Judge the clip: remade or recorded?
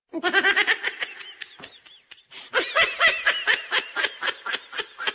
recorded